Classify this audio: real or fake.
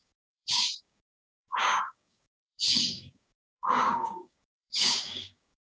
fake